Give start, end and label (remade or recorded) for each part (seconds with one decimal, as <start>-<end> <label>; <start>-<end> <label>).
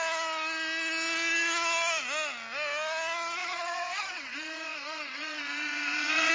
0.0-3.4 recorded; 3.4-6.3 remade